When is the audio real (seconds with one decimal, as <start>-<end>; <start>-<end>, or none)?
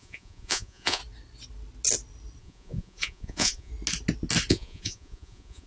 1.0-2.4; 3.7-4.5